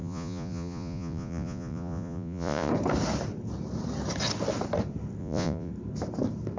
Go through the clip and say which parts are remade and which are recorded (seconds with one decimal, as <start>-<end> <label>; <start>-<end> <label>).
0.0-2.7 remade; 2.7-5.2 recorded; 5.2-5.7 remade; 5.7-6.6 recorded